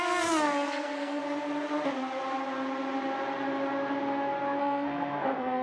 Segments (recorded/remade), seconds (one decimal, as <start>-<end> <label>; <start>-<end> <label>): 0.0-1.2 remade; 1.2-4.6 recorded; 4.6-5.6 remade